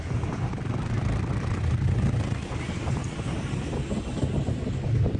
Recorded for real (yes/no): yes